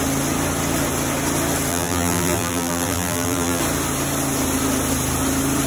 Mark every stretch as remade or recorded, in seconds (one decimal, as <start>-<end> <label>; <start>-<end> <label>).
0.0-1.7 recorded; 1.7-3.6 remade; 3.6-5.7 recorded